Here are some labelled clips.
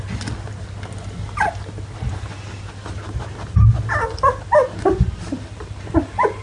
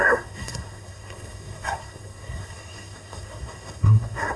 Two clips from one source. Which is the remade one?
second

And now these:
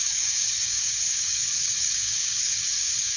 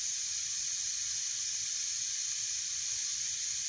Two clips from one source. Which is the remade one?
first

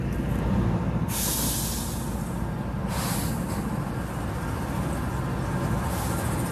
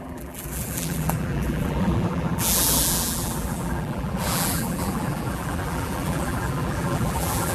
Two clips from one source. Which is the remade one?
second